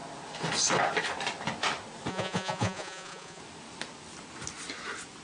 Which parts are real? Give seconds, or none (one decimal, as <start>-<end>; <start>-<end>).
0.0-2.1; 3.4-5.2